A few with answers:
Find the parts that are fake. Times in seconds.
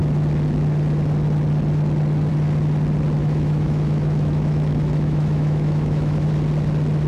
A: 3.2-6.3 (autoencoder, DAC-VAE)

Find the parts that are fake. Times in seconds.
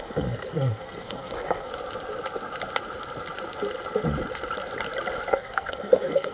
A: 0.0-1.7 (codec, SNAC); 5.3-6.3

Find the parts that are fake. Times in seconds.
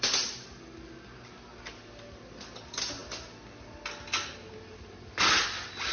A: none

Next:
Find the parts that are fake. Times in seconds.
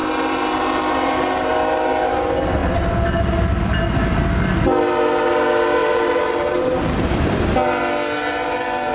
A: 0.0-1.5 (vocoder, BigVGAN v2); 5.8-7.3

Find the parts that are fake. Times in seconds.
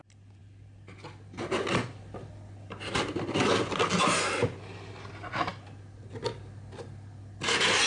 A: none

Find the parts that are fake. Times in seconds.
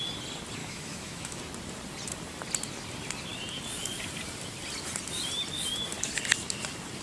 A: 0.6-1.4 (autoencoder, DAC-VAE)